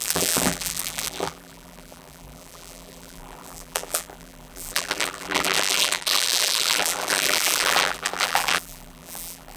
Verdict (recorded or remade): remade